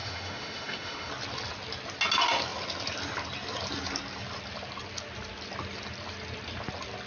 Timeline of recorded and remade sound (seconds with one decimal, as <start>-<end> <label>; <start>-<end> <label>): 0.0-1.1 remade; 1.1-7.1 recorded